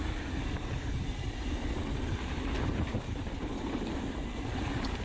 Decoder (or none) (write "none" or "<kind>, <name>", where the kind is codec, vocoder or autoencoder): none